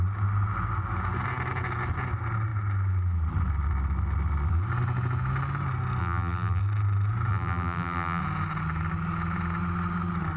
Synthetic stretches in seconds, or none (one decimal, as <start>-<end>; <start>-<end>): 6.0-6.6; 7.3-8.2